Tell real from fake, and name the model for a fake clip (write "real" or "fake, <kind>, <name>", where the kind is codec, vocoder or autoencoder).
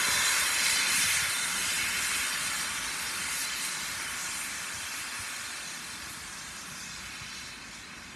real